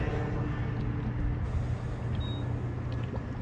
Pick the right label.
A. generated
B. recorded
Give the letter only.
B